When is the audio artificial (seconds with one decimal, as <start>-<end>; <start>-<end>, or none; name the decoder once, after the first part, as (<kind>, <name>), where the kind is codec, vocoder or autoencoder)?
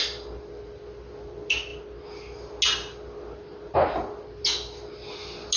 none